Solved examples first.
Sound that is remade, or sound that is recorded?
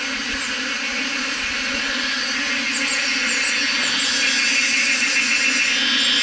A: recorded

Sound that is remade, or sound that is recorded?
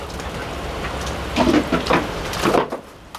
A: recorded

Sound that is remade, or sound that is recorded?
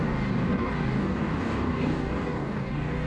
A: remade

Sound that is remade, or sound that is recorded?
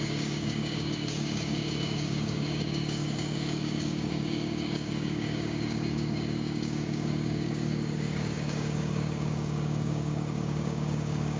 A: remade